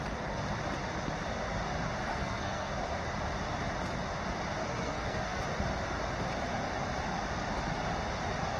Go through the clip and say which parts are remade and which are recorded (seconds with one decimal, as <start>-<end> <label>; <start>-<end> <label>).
0.0-2.1 recorded; 2.1-2.7 remade; 2.7-4.6 recorded; 4.6-5.4 remade; 5.4-8.6 recorded